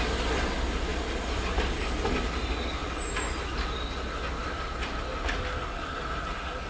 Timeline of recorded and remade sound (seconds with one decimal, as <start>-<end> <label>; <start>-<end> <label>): 0.0-6.7 recorded